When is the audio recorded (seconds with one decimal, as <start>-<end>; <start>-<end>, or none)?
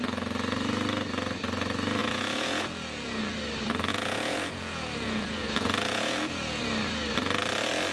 0.0-2.0; 3.2-3.9; 6.6-7.9